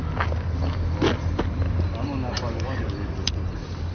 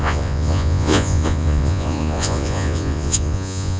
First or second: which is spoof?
second